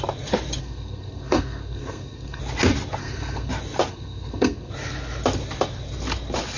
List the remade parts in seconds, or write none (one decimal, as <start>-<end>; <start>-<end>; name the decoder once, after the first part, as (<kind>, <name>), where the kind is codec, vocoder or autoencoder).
0.6-2.4 (codec, SNAC); 3.0-3.5; 3.9-4.7